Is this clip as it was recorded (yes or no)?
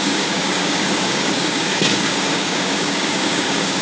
no